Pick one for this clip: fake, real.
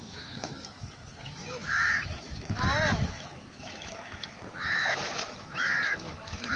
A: fake